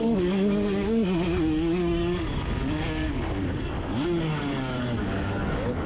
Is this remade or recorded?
remade